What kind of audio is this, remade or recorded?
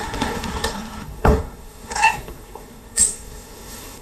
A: remade